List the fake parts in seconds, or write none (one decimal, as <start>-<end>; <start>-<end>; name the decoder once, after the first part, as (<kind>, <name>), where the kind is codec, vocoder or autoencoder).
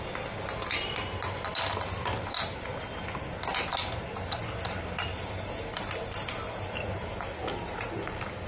none